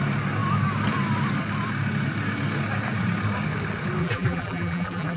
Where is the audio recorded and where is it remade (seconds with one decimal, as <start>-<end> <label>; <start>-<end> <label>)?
0.0-4.0 recorded; 4.0-5.2 remade